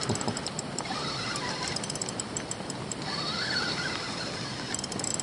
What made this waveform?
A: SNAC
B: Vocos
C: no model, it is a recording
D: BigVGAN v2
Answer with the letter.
D